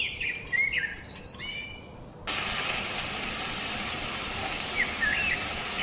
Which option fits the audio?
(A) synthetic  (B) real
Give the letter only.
B